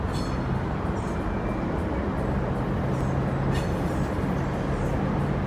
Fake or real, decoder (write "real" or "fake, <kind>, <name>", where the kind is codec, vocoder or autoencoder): real